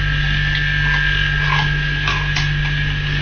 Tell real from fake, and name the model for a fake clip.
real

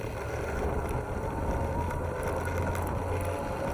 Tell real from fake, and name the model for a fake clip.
real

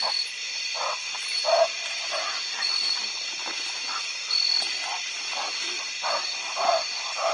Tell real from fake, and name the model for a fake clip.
real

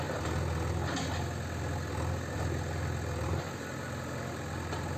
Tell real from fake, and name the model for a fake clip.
real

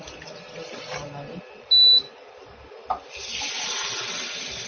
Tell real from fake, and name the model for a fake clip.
real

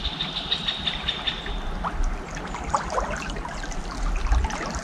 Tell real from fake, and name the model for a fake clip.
real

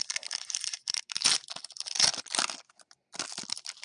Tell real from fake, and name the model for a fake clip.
real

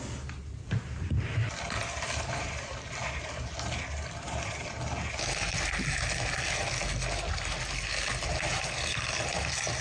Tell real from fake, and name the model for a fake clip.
real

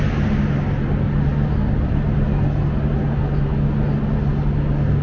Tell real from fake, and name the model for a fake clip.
real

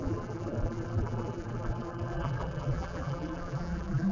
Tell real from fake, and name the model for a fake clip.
fake, vocoder, BigVGAN v2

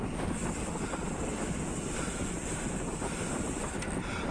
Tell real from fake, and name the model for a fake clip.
real